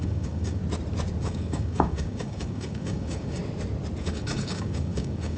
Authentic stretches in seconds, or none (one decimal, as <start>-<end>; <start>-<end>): 0.6-1.2; 3.4-4.0